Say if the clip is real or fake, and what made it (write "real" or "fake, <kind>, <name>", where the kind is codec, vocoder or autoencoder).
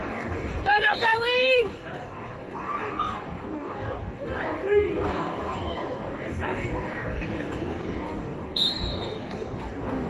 fake, codec, DAC